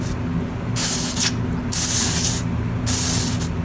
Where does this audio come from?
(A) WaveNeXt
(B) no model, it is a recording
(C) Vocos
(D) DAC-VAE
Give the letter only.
B